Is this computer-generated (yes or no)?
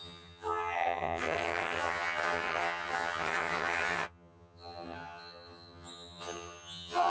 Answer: yes